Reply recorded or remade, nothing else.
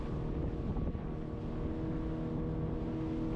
recorded